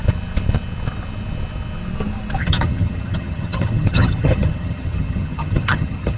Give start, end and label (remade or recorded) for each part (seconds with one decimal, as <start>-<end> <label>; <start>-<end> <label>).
0.0-2.4 recorded; 2.4-6.2 remade